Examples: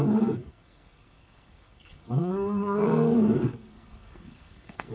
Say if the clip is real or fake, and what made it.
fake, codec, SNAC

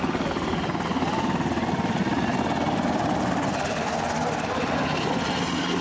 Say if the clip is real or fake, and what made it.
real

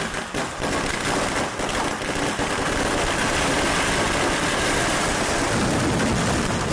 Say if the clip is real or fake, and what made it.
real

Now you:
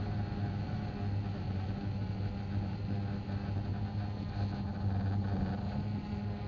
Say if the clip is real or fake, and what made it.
real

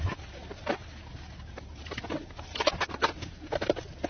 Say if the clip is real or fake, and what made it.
real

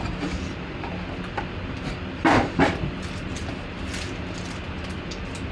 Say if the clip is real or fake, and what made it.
real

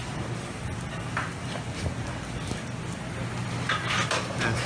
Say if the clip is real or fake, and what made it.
real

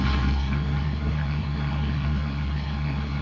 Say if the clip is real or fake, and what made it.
fake, codec, SNAC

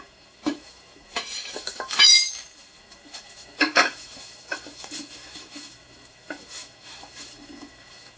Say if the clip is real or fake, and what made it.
fake, autoencoder, DAC-VAE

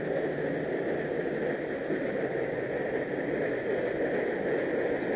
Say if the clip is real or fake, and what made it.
real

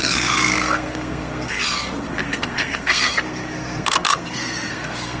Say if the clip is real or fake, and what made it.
fake, codec, SNAC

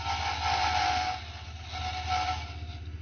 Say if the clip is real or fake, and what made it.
real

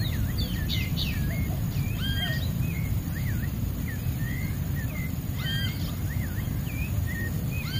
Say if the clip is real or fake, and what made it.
fake, vocoder, BigVGAN v2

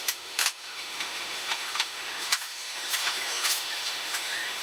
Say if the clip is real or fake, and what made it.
fake, autoencoder, DAC-VAE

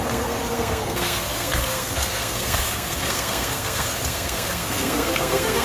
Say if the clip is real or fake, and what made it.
fake, codec, SNAC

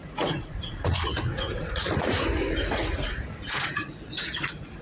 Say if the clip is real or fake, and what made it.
fake, vocoder, Vocos